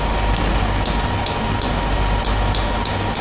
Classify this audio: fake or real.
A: real